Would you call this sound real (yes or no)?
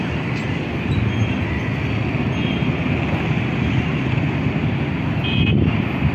yes